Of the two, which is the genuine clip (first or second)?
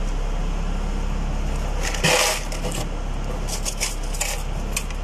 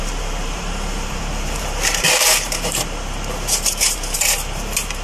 first